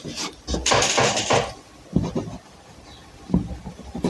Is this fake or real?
real